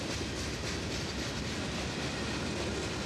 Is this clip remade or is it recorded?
recorded